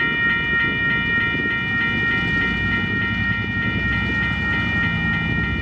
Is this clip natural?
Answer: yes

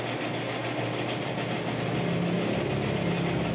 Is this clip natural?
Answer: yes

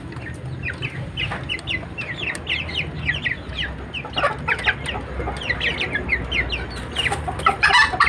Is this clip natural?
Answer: yes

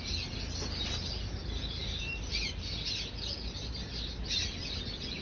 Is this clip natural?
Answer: yes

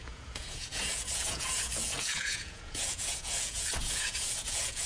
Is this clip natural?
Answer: no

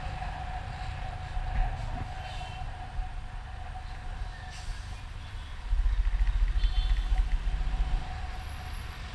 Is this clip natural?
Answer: yes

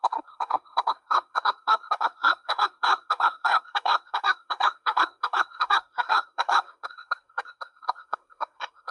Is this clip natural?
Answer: no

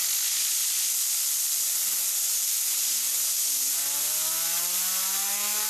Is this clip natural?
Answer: yes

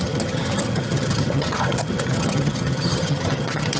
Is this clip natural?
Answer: no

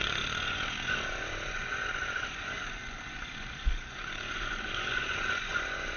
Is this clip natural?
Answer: no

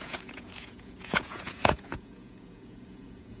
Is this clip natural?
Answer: no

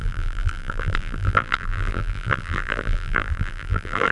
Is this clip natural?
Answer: no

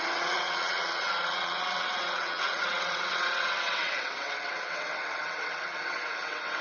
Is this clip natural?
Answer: no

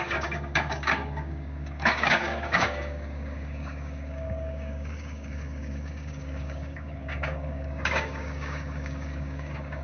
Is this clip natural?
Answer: no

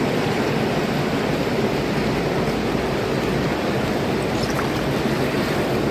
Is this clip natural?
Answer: yes